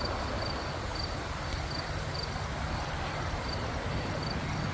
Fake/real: real